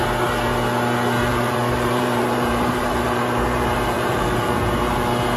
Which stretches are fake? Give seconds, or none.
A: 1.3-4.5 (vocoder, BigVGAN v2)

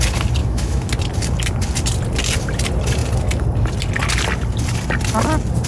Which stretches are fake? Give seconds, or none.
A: 0.4-0.9 (autoencoder, DAC-VAE)